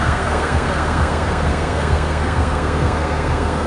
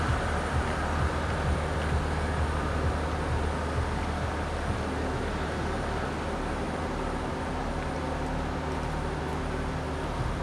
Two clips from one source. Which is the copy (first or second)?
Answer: first